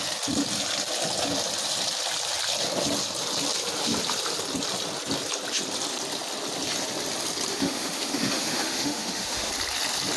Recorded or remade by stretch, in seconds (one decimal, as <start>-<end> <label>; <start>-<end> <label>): 0.0-7.5 recorded; 7.5-9.5 remade; 9.5-10.2 recorded